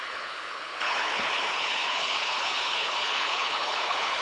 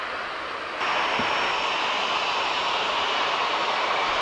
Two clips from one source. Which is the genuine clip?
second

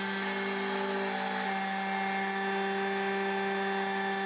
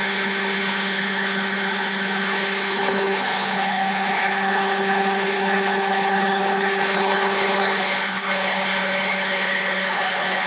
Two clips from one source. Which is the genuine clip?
first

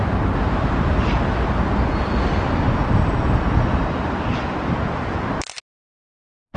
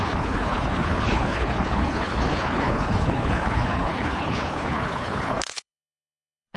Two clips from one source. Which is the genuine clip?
first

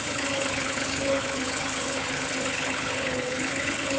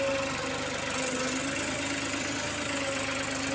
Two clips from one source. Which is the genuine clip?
second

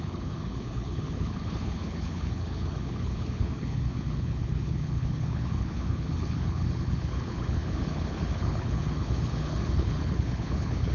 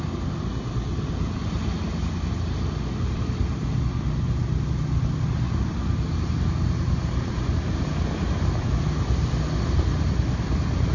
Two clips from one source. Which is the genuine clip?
second